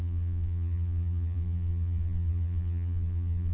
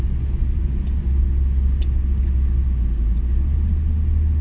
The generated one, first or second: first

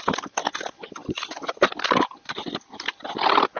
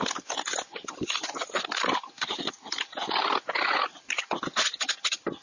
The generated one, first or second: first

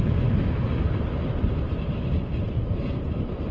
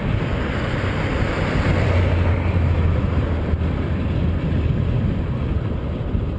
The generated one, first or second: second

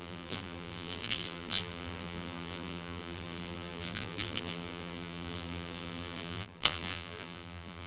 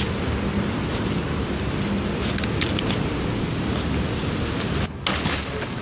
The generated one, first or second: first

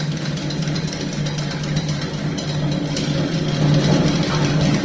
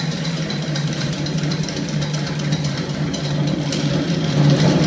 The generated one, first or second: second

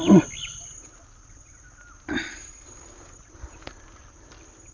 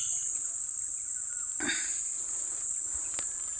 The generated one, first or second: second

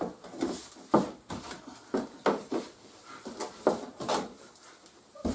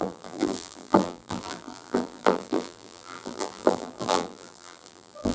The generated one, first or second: second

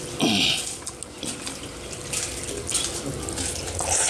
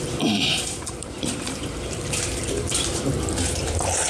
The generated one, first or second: second